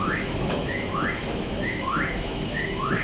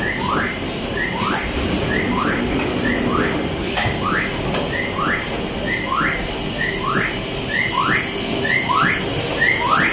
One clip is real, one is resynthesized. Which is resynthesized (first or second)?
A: first